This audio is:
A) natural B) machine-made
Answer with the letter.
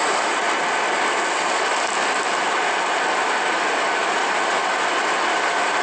A